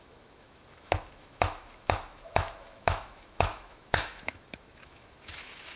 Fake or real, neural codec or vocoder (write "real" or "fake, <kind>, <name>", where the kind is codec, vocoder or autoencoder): fake, autoencoder, DAC-VAE